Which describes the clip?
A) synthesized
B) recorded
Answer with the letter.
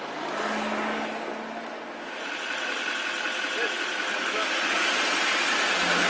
B